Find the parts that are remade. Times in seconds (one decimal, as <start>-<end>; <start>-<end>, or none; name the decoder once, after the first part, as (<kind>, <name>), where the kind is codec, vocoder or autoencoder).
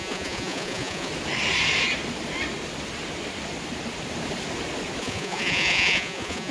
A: 0.0-1.1 (vocoder, Vocos); 5.0-6.5